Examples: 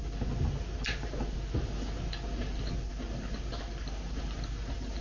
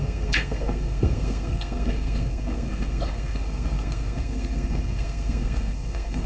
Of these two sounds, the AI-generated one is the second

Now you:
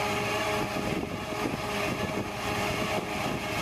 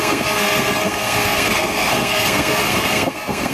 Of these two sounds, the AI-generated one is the second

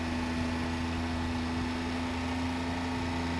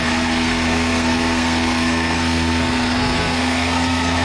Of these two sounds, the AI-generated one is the second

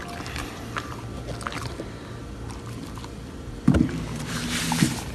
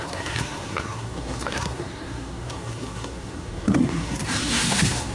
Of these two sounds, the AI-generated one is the second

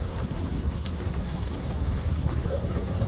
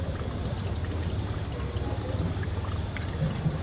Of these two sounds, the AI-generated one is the first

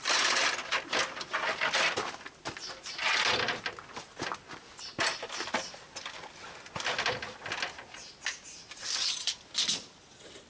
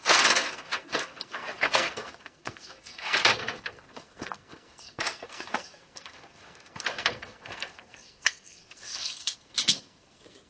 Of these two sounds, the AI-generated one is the second